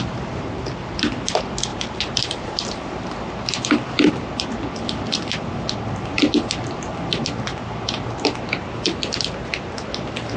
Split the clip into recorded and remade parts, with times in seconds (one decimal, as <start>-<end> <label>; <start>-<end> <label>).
0.0-1.7 recorded; 1.7-2.9 remade; 2.9-10.4 recorded